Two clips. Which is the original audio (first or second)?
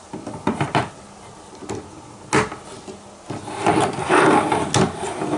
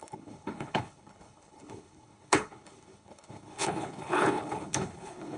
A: first